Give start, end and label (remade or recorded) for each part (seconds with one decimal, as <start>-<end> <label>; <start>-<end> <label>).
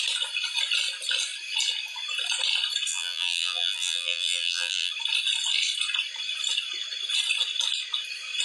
0.0-2.9 recorded; 2.9-4.9 remade; 4.9-8.4 recorded